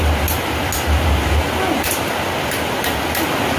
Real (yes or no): yes